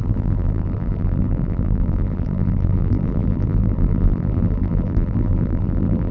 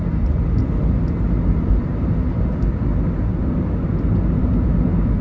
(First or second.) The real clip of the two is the second